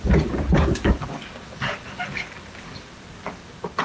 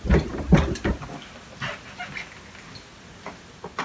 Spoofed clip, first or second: first